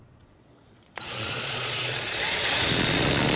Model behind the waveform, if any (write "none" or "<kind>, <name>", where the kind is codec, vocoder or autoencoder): vocoder, Vocos